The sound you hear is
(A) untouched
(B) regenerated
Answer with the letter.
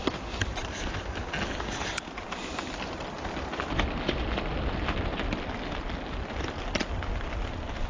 A